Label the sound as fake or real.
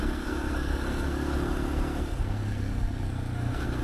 fake